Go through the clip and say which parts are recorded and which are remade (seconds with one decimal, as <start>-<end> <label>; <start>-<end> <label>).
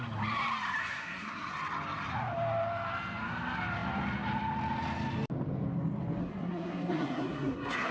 0.0-0.8 recorded; 0.8-1.5 remade; 1.5-6.2 recorded; 6.2-7.9 remade